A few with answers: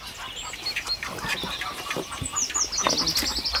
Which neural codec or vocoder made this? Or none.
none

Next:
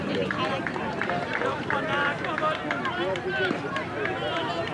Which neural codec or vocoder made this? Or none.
none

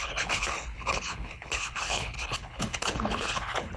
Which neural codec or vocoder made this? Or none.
codec, HILCodec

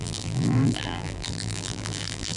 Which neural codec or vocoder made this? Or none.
vocoder, BigVGAN v2